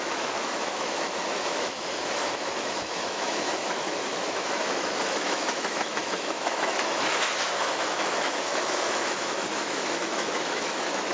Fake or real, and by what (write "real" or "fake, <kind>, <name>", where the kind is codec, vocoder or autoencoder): fake, autoencoder, DAC-VAE